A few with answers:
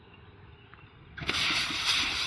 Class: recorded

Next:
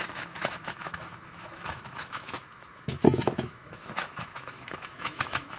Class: remade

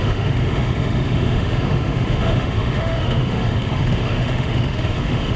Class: remade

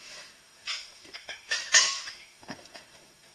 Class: remade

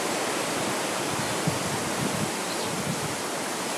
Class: recorded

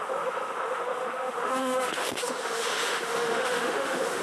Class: remade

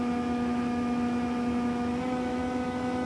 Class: remade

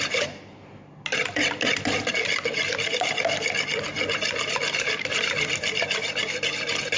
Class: recorded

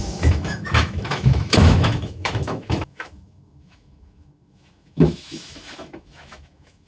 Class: remade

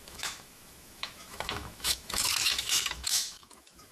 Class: remade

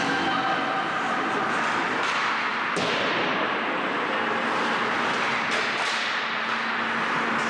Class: recorded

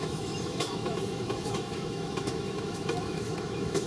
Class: remade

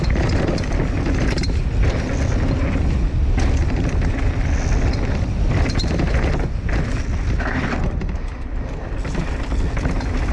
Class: recorded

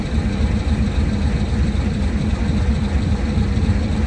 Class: recorded